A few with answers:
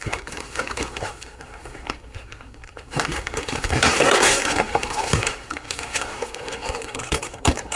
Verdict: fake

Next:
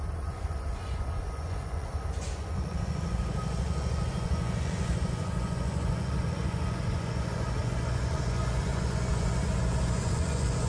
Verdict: fake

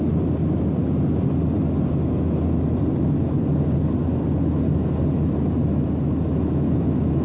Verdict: real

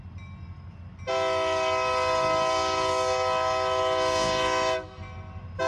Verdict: real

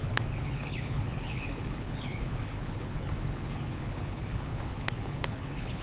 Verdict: fake